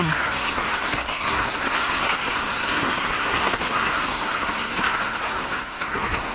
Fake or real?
fake